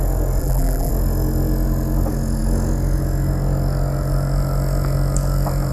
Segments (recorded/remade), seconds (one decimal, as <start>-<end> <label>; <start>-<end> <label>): 0.0-0.4 recorded; 0.4-0.9 remade; 0.9-5.7 recorded